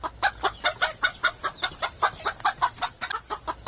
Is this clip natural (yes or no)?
yes